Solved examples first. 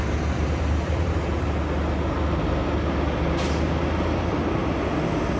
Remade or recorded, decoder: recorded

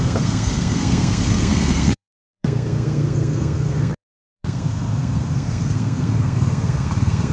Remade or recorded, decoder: remade, codec, SNAC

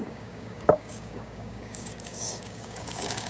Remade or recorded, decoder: remade, codec, DAC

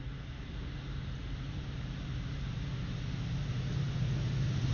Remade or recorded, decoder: recorded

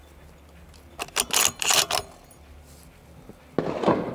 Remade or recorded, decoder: recorded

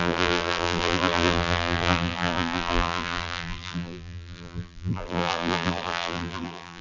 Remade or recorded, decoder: remade, vocoder, BigVGAN v2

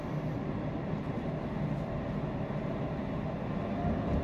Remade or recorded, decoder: recorded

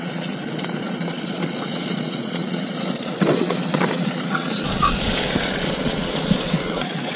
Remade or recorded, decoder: remade, vocoder, Vocos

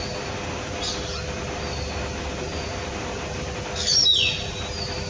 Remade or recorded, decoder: recorded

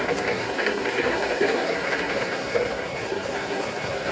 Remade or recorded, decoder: remade, codec, SNAC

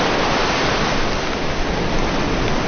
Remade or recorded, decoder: recorded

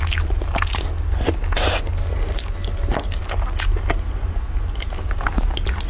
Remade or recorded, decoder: recorded